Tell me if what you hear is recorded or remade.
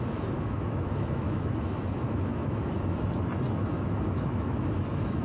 remade